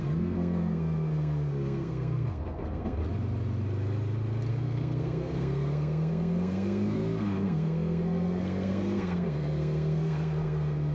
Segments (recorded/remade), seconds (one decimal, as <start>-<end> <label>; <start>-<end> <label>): 0.0-3.0 remade; 3.0-4.5 recorded; 4.5-10.9 remade